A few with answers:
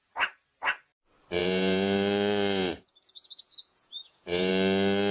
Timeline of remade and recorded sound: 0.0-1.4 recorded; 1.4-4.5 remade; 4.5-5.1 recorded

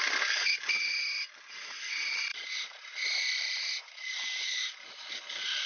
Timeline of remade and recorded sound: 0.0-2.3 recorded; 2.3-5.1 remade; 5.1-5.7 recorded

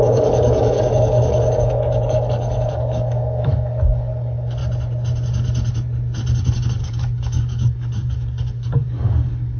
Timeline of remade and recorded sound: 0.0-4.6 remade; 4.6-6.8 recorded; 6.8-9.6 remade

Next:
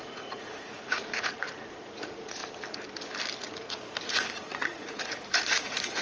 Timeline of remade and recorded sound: 0.0-2.4 remade; 2.4-4.1 recorded; 4.1-6.0 remade

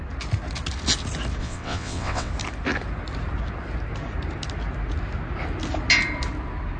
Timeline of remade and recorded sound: 0.0-1.4 recorded; 1.4-2.3 remade; 2.3-6.8 recorded

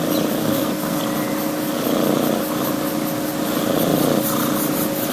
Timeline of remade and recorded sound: 0.0-0.4 recorded; 0.4-1.0 remade; 1.0-5.1 recorded

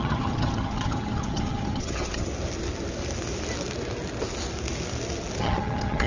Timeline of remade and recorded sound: 0.0-2.3 remade; 2.3-5.4 recorded; 5.4-6.1 remade